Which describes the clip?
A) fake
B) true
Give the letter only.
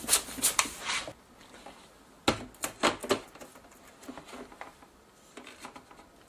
B